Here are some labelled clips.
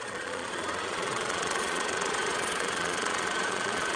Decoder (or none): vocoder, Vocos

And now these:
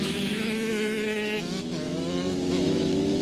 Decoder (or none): autoencoder, DAC-VAE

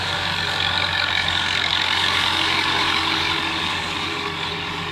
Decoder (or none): codec, DAC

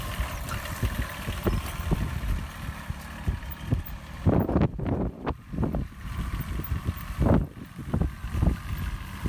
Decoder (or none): vocoder, BigVGAN v2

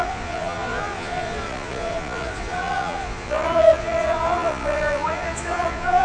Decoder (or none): vocoder, Vocos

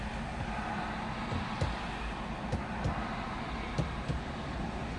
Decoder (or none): none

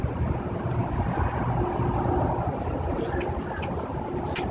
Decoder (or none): none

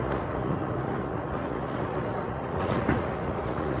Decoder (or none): vocoder, Vocos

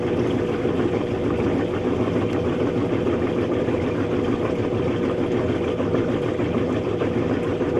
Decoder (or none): none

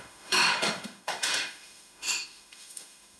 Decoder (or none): autoencoder, DAC-VAE